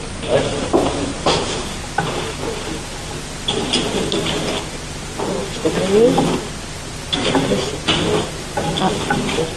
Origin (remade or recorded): recorded